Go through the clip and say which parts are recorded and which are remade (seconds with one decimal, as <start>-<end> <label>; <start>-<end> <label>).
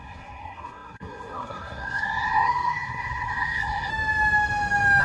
0.0-3.9 remade; 3.9-5.0 recorded